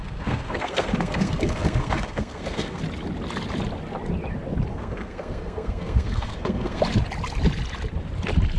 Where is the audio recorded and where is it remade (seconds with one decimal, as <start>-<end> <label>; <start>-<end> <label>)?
0.0-2.8 remade; 2.8-4.7 recorded; 4.7-6.8 remade; 6.8-8.6 recorded